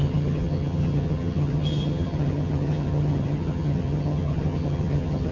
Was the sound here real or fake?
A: fake